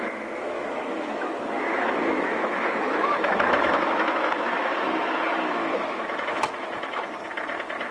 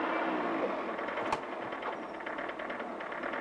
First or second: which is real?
second